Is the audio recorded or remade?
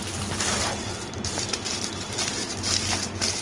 recorded